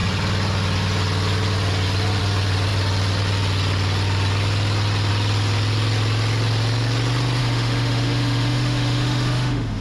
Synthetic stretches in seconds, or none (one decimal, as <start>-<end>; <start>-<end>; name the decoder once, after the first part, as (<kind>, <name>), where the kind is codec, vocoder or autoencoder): 7.4-9.8 (autoencoder, DAC-VAE)